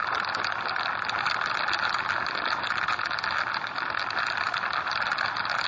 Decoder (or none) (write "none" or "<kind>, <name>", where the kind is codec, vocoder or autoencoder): none